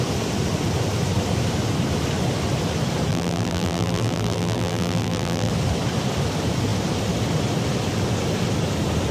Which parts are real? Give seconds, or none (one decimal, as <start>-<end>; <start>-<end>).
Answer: 0.0-3.1; 5.5-9.1